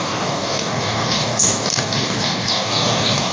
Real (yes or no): no